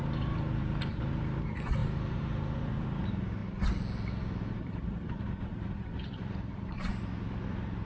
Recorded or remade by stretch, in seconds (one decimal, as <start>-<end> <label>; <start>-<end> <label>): 0.0-3.4 remade; 3.4-4.4 recorded; 4.4-7.8 remade